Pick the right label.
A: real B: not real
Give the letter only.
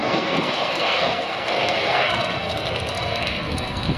B